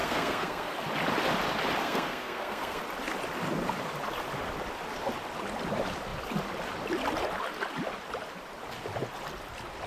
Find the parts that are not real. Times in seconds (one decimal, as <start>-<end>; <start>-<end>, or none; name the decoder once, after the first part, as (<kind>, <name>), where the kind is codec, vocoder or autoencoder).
0.0-0.7 (codec, SNAC); 1.8-2.8